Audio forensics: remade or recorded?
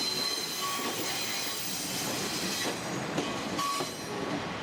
recorded